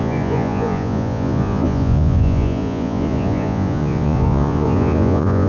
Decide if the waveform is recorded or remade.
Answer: remade